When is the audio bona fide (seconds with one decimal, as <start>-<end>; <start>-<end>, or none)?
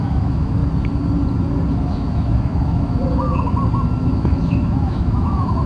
0.6-1.7; 3.0-4.0